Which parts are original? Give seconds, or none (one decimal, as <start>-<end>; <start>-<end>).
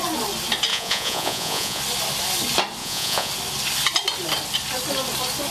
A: 0.0-0.7; 1.8-2.8; 3.3-5.5